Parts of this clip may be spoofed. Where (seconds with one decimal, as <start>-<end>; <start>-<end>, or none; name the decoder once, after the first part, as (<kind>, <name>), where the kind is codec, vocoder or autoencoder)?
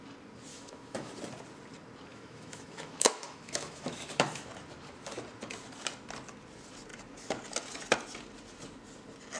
0.5-1.1 (autoencoder, DAC-VAE); 2.1-4.5